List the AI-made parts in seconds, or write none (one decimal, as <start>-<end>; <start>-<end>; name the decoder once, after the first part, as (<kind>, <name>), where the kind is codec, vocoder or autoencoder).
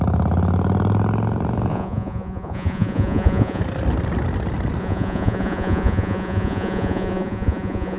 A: 1.7-3.6 (vocoder, Vocos); 4.8-8.0